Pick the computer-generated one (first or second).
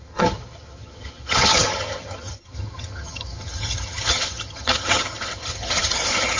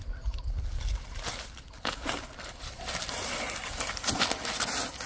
first